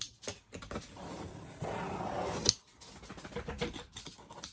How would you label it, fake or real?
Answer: real